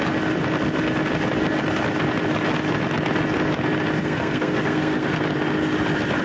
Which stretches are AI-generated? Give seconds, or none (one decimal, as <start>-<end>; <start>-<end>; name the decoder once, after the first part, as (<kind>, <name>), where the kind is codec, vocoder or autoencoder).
4.0-5.2 (codec, SNAC)